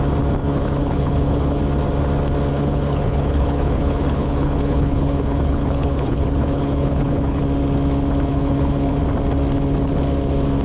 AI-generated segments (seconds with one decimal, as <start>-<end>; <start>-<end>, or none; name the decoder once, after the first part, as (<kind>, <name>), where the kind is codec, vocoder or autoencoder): 0.4-1.6 (codec, HILCodec); 2.5-7.4; 8.3-9.0